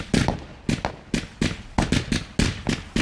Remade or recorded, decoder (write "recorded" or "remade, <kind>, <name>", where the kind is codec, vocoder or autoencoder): recorded